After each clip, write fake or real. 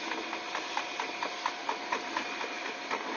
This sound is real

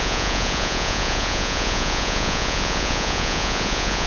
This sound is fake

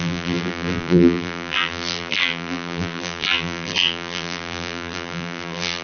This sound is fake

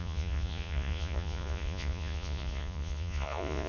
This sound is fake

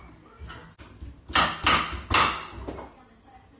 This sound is real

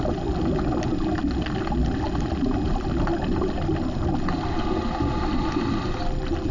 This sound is real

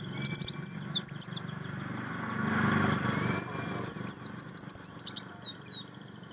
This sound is real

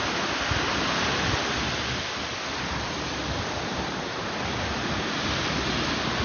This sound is real